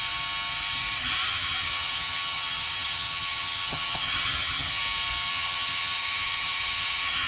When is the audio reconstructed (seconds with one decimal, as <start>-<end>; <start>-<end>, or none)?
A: 1.3-4.8; 5.3-7.3